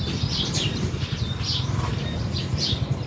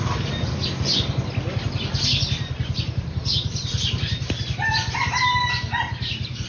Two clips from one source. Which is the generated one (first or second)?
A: first